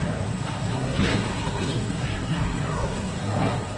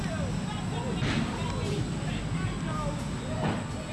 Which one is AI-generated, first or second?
first